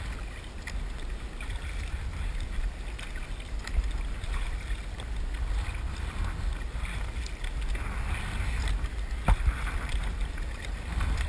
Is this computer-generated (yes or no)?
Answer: no